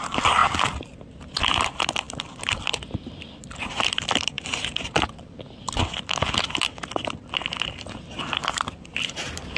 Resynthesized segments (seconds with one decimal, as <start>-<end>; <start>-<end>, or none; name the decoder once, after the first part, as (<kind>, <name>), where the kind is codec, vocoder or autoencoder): 0.0-0.4 (vocoder, BigVGAN v2); 1.4-9.6